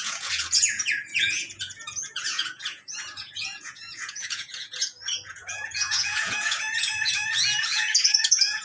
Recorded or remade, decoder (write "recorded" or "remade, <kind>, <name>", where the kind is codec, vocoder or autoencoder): remade, vocoder, Vocos